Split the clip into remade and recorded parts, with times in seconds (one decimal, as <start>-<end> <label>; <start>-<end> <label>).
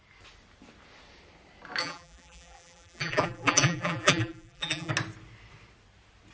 0.0-1.8 recorded; 1.8-4.9 remade; 4.9-6.3 recorded